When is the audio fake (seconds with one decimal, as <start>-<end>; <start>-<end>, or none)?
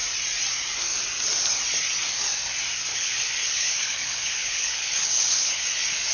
2.9-5.6